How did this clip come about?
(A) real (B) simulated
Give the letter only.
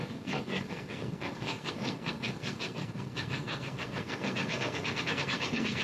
B